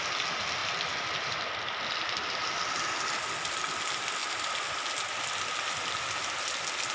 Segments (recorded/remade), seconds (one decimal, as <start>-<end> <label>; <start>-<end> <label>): 0.0-6.9 recorded